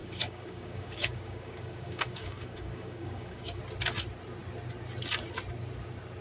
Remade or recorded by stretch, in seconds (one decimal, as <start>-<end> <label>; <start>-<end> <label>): 0.0-3.6 remade; 3.6-6.2 recorded